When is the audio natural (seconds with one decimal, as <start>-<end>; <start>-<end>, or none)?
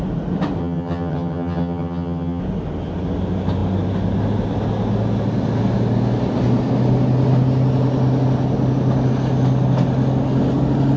0.0-0.6; 2.4-11.0